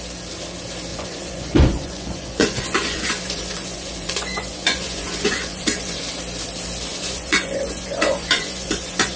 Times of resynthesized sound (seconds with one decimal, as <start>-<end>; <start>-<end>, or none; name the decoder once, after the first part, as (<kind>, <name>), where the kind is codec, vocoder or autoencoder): 0.9-6.0 (vocoder, Vocos); 6.9-9.2